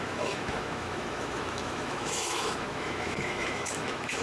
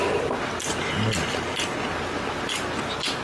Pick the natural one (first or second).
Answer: second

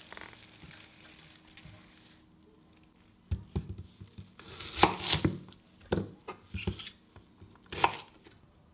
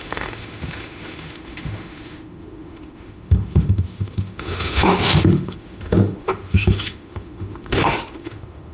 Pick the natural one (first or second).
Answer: first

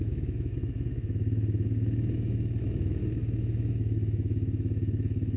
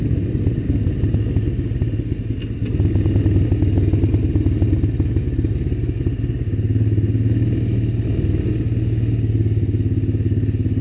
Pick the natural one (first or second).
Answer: second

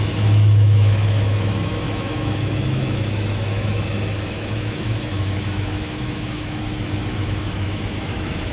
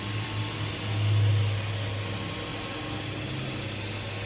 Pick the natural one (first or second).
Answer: second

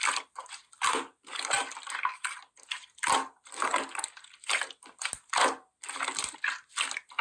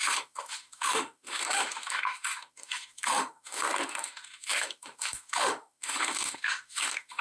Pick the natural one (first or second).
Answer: first